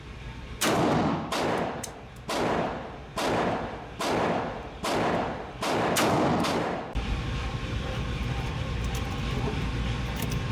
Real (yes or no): no